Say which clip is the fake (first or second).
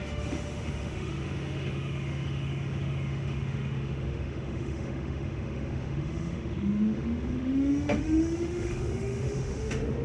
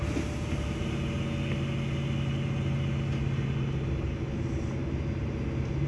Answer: first